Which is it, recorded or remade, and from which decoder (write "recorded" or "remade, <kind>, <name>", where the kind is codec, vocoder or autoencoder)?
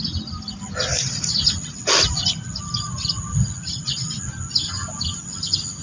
recorded